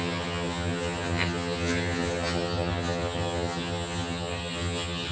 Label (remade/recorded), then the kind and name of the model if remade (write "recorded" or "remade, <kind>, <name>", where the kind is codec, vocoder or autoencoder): remade, vocoder, HiFi-GAN